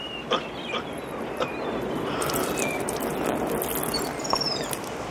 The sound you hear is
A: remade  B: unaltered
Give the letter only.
A